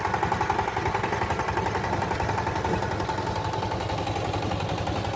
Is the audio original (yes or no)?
yes